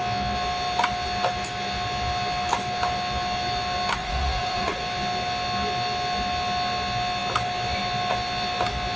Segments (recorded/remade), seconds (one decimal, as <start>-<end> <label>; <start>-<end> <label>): 0.0-4.0 recorded; 4.0-4.8 remade; 4.8-9.0 recorded